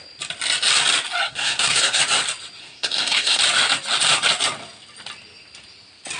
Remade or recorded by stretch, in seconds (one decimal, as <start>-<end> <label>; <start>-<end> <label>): 0.0-1.2 recorded; 1.2-2.0 remade; 2.0-2.6 recorded; 2.6-3.4 remade; 3.4-6.2 recorded

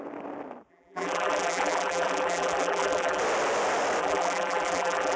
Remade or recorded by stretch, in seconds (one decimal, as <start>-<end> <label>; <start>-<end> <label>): 0.0-0.7 recorded; 0.7-3.2 remade; 3.2-4.0 recorded; 4.0-5.2 remade